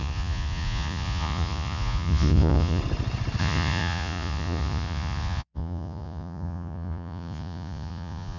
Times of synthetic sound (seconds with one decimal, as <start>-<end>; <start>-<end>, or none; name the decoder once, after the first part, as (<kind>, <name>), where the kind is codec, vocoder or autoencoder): 0.0-2.8 (vocoder, Vocos); 3.4-8.4